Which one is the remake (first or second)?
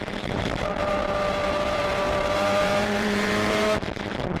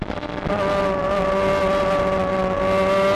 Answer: first